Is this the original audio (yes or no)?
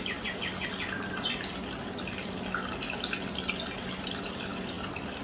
yes